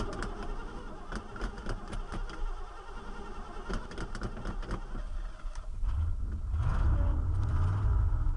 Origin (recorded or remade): recorded